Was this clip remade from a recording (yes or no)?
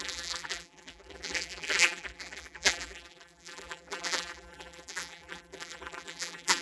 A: yes